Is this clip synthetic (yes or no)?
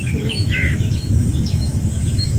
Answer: yes